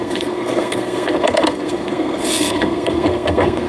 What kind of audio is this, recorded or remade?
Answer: remade